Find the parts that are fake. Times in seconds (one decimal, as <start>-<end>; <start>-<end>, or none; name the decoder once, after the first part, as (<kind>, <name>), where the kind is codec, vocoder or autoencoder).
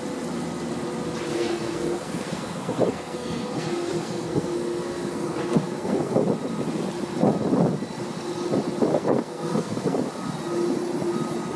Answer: 1.3-6.2 (codec, SNAC); 8.9-10.0